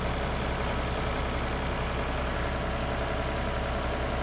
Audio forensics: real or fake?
real